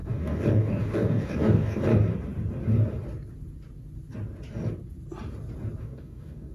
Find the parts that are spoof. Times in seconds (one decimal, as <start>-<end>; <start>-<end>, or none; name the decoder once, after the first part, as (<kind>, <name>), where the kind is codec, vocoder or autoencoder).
0.0-1.9 (codec, DAC); 5.8-6.5